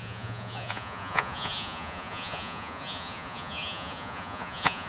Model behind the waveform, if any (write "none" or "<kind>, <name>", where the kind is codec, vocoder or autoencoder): vocoder, Vocos